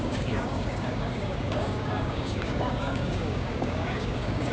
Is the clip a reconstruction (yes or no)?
yes